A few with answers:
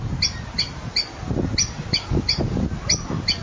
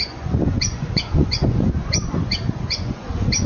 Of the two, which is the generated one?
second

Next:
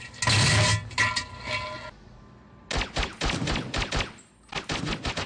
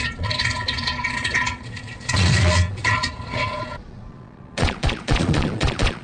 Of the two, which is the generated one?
second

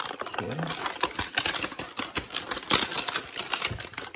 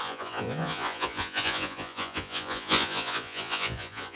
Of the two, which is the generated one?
second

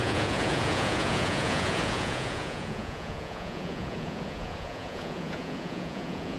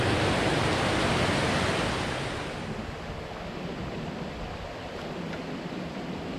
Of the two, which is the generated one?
first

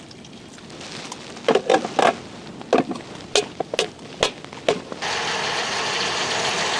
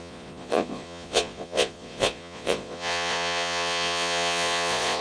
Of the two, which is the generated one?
second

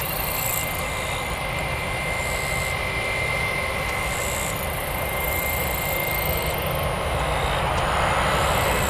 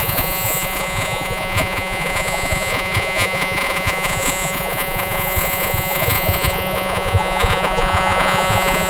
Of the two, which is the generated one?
second